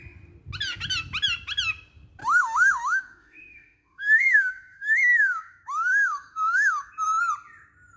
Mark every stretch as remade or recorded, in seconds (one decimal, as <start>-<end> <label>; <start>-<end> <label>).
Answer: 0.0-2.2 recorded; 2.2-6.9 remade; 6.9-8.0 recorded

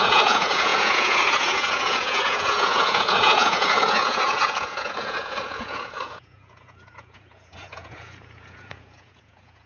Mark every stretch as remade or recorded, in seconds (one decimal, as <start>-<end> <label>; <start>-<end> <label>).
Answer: 0.0-9.7 remade

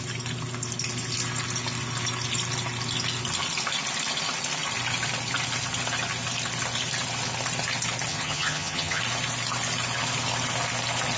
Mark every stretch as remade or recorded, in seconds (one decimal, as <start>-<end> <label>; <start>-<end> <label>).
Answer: 0.0-8.1 recorded; 8.1-9.0 remade; 9.0-11.2 recorded